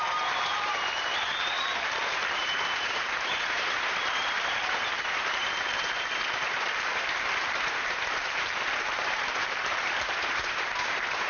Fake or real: fake